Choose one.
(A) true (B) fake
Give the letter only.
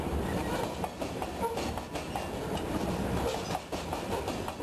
A